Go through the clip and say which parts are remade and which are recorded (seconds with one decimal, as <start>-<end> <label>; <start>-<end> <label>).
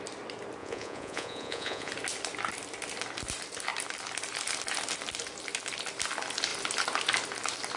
0.0-0.6 recorded; 0.6-1.9 remade; 1.9-7.8 recorded